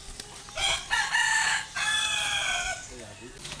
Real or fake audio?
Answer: real